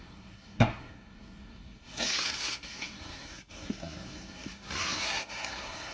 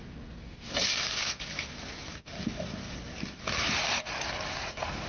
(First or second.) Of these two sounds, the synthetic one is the first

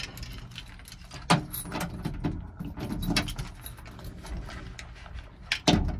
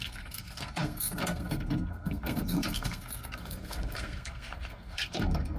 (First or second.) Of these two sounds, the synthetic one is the second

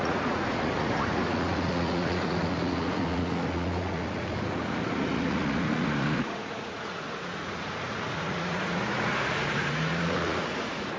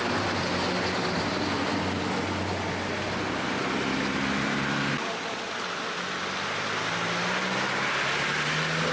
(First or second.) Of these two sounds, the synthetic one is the first